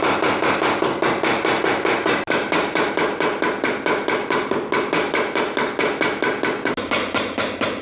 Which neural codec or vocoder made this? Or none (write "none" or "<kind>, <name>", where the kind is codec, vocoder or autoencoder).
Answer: none